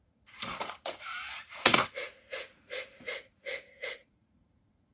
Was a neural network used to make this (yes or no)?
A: yes